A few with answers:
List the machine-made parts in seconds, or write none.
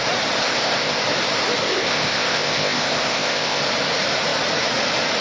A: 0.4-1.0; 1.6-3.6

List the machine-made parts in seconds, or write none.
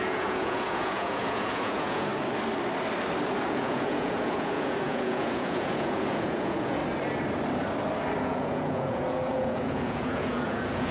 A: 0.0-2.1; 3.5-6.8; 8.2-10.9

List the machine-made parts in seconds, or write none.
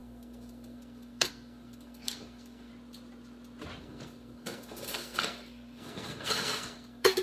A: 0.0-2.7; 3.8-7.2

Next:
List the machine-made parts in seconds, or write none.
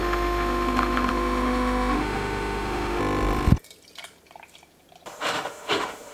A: 0.0-3.0; 5.2-6.1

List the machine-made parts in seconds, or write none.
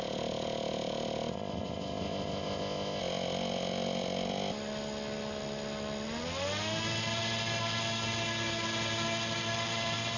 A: 1.3-3.0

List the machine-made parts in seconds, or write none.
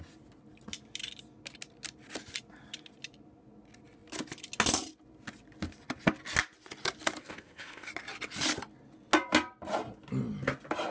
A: 7.2-7.9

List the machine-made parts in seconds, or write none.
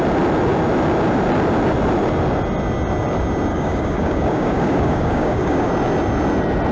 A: 3.5-5.7